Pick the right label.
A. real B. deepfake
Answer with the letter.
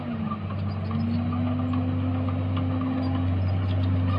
A